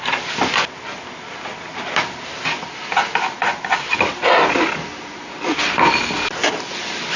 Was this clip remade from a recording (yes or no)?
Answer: no